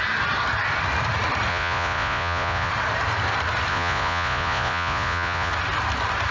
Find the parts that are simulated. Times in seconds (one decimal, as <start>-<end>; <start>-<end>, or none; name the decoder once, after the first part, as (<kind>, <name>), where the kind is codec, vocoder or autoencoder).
1.5-2.7 (vocoder, Vocos); 3.7-5.5

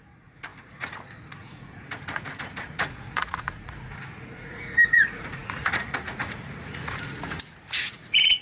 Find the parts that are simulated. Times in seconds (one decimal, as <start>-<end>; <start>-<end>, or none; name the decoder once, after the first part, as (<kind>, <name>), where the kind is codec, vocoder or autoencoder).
0.0-8.4 (vocoder, Vocos)

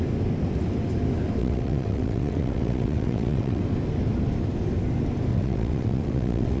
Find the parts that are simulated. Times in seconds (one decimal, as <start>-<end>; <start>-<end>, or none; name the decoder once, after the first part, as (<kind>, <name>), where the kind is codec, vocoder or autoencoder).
1.4-3.6 (vocoder, WaveNeXt); 5.3-6.6

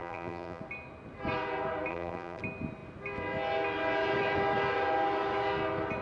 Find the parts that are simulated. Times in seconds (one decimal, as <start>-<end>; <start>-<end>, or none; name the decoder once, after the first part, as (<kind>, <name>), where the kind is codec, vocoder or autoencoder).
0.0-0.6 (vocoder, BigVGAN v2); 1.9-2.4

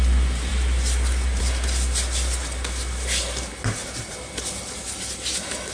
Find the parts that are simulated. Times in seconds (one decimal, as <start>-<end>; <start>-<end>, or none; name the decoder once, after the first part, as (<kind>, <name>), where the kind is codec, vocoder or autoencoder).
none

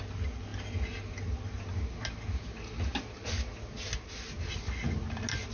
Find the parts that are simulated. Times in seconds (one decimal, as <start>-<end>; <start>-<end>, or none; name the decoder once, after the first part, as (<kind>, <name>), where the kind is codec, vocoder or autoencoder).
none

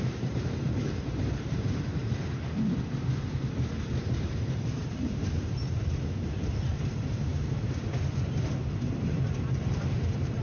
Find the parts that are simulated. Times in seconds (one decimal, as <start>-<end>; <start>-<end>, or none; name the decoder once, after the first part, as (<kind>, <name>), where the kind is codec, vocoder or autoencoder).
0.0-2.0 (vocoder, BigVGAN v2); 3.8-7.3; 8.7-10.4

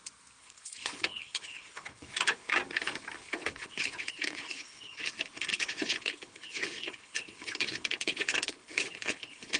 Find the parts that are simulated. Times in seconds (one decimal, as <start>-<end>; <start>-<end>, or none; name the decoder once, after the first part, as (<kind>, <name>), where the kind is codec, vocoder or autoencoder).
0.4-2.5 (codec, HILCodec); 3.2-5.0; 5.5-9.6